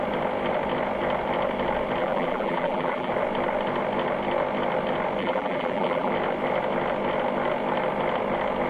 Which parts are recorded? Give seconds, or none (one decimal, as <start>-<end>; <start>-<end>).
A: 0.0-2.0; 3.1-5.2; 6.1-8.7